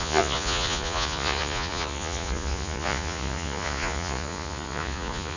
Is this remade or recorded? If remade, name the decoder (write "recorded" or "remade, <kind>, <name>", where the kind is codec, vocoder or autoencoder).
remade, vocoder, Vocos